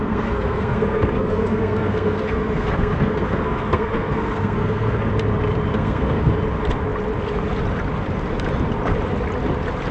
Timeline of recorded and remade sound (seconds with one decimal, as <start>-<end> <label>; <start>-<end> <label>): 0.0-5.1 remade; 5.1-5.7 recorded; 5.7-6.3 remade; 6.3-9.9 recorded